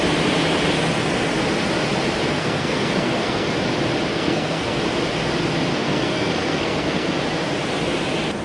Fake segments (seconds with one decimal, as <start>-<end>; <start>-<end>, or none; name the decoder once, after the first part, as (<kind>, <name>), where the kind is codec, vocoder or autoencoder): 2.3-3.5 (codec, SNAC); 4.1-4.8; 5.7-7.1